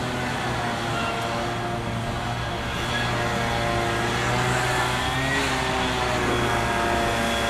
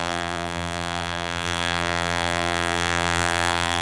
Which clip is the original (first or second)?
first